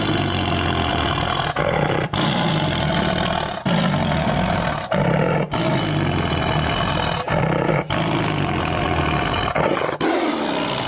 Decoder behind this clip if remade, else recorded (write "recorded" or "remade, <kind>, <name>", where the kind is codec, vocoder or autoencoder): recorded